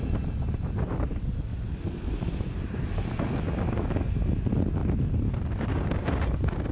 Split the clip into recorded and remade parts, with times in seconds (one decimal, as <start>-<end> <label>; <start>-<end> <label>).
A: 0.0-6.7 recorded

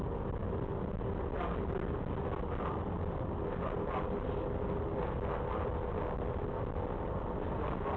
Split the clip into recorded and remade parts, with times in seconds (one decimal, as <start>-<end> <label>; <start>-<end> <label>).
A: 0.0-8.0 recorded

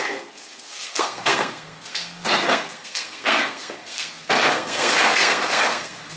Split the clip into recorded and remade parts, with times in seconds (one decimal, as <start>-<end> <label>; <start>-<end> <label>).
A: 0.0-6.2 remade

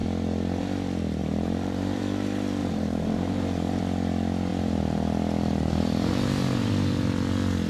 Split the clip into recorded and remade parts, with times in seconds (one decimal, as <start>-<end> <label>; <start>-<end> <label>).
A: 0.0-1.2 recorded; 1.2-2.0 remade; 2.0-2.6 recorded; 2.6-3.8 remade; 3.8-7.7 recorded